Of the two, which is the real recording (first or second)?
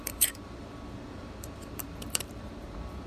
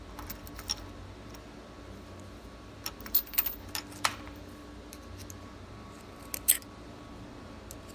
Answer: second